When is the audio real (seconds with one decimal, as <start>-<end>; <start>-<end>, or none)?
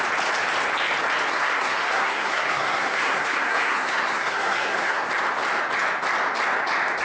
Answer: 0.0-1.3; 5.1-7.0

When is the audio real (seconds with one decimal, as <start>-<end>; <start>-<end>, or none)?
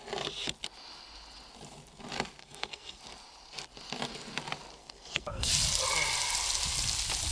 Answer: 0.0-2.4; 3.0-4.8; 5.5-7.3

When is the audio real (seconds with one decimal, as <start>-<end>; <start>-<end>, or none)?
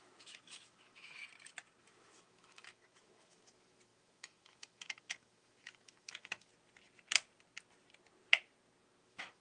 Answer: 1.2-1.8; 6.5-9.0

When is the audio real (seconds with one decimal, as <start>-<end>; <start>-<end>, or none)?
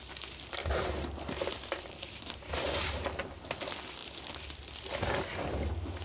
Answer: 0.0-0.6; 3.4-4.0; 5.2-6.0